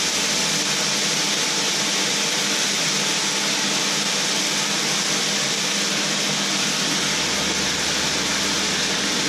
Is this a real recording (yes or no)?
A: yes